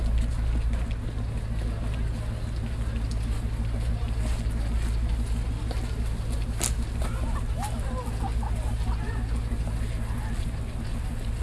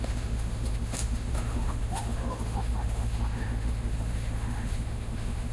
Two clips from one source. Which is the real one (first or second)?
first